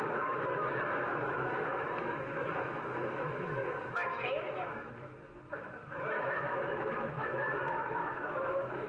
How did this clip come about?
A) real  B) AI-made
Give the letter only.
B